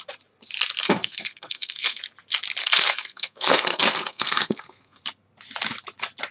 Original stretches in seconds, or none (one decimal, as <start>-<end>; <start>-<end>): 0.0-0.8; 2.0-2.6; 5.0-6.3

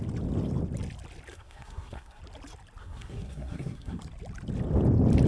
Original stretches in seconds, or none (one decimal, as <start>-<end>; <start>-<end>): 0.0-1.3; 2.2-2.8; 4.0-5.3

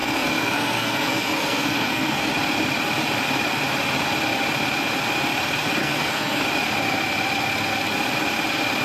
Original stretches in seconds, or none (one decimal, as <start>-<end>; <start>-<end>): 2.3-5.8; 6.4-8.8

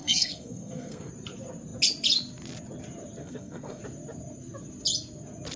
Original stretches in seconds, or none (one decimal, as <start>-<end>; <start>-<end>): 1.1-3.2; 3.8-5.6

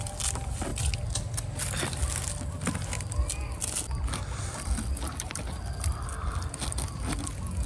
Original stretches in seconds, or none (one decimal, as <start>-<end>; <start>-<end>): 0.0-7.7

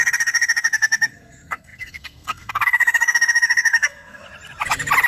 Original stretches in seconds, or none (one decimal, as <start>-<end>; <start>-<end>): 4.2-5.1